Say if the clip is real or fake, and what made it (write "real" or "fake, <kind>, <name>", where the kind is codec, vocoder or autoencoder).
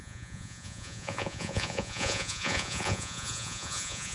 fake, vocoder, Vocos